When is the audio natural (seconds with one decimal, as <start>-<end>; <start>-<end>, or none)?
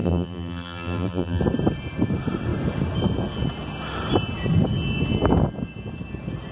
1.4-6.5